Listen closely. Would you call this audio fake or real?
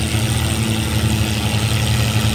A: real